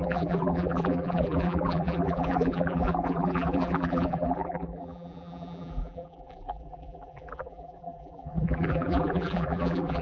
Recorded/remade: remade